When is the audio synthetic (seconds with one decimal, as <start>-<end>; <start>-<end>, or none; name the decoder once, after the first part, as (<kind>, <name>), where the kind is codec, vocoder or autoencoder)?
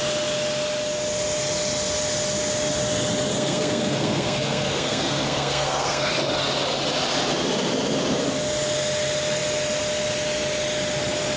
3.3-6.1 (codec, SNAC)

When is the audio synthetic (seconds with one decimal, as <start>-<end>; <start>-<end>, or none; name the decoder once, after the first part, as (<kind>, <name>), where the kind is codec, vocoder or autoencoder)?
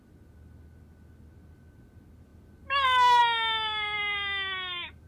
none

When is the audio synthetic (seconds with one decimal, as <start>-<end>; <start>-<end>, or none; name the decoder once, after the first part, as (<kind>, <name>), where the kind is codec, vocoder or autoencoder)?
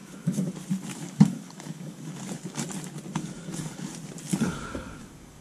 0.0-0.5 (codec, DAC); 0.9-2.2; 3.2-3.9; 4.3-5.4